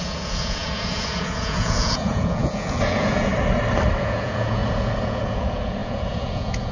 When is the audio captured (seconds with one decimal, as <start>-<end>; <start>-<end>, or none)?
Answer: 3.3-4.0